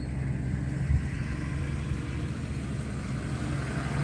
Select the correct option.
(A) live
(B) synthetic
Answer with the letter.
A